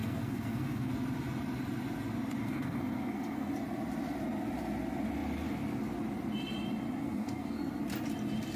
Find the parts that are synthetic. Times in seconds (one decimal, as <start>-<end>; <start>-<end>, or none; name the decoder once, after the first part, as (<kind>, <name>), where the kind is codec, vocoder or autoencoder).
0.0-0.9 (codec, SNAC); 2.4-3.5; 7.0-7.8